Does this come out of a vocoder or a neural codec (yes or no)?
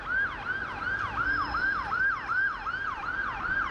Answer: no